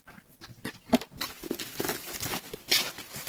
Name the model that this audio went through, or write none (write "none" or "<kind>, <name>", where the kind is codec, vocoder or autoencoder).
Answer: none